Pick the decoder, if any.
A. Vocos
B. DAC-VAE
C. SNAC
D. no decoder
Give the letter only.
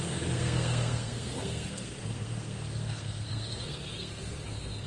C